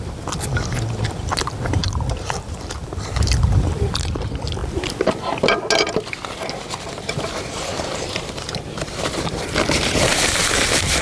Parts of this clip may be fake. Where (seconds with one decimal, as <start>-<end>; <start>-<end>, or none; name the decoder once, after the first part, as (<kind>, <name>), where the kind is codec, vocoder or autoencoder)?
1.8-3.9 (vocoder, BigVGAN v2); 7.7-8.5